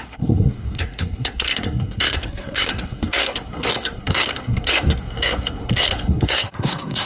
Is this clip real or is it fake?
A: fake